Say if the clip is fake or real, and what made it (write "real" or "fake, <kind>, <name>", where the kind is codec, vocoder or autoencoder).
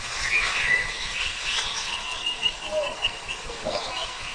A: fake, codec, SNAC